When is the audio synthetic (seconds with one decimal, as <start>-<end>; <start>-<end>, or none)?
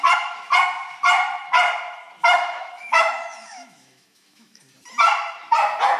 2.2-4.6